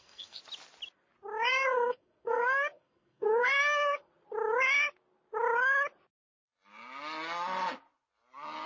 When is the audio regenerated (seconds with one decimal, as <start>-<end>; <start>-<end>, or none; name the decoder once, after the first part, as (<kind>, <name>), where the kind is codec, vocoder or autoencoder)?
0.0-0.4 (codec, SNAC); 1.5-4.1